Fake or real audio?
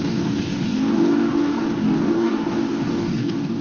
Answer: fake